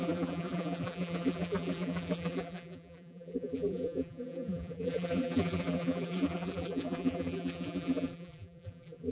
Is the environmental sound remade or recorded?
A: remade